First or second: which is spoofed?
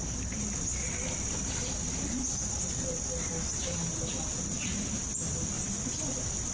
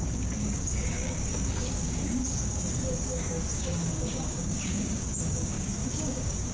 second